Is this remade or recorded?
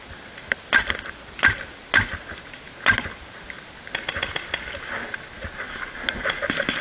recorded